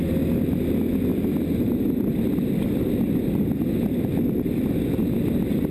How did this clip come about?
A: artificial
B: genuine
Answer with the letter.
B